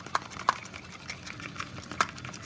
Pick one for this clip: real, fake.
real